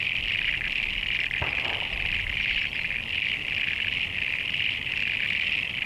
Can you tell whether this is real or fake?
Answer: real